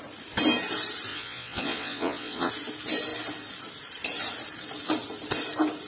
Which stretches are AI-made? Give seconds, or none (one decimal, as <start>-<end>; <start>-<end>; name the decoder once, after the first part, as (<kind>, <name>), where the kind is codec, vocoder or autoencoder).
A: 1.1-2.5 (vocoder, Vocos)